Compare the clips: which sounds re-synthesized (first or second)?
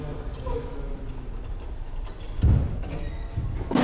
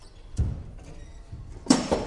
second